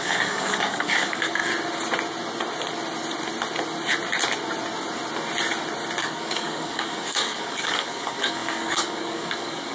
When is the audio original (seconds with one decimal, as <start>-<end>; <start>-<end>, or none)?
1.5-6.0